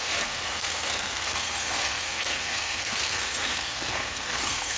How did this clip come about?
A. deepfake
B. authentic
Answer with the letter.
A